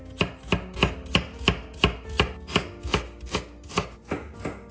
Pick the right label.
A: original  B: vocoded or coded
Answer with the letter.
A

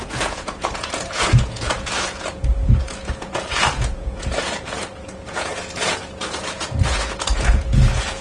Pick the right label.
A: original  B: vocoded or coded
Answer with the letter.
B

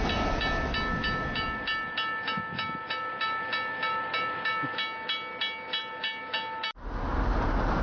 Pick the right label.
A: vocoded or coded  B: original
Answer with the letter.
B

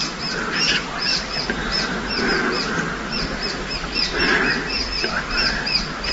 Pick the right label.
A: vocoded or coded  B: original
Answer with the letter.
B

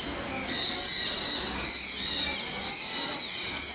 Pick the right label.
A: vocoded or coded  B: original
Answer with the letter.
B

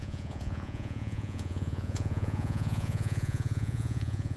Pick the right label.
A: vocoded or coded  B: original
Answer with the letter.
A